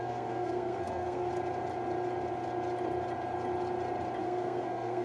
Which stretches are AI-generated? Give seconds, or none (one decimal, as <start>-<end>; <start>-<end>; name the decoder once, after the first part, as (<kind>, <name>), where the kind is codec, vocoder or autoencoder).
0.0-1.3 (codec, SNAC); 4.2-5.0